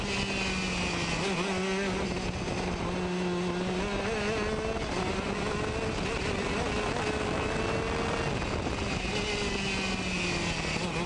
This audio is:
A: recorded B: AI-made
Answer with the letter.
A